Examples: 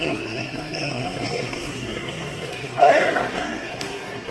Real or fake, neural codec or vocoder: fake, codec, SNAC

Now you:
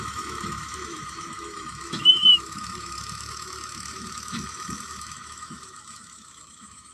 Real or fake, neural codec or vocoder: fake, autoencoder, DAC-VAE